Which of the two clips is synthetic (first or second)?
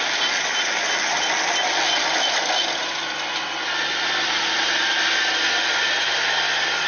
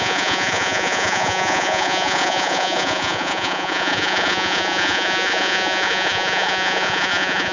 second